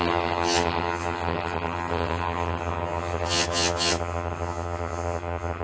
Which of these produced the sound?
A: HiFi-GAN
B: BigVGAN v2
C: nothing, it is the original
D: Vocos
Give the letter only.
A